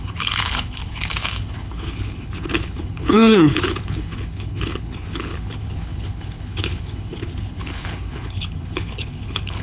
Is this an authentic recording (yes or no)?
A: no